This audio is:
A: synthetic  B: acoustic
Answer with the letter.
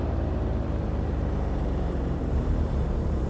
A